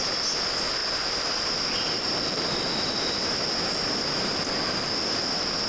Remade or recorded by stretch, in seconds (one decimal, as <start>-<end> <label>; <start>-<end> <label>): 0.0-5.7 recorded